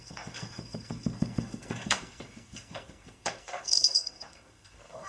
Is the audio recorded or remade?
remade